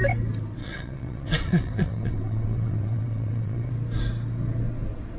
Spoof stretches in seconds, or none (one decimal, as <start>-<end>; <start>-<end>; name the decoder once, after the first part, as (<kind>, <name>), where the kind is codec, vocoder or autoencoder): 0.6-3.7 (vocoder, WaveNeXt)